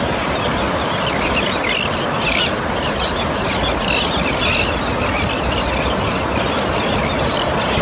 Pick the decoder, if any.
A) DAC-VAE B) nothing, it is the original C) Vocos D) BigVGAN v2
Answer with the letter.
B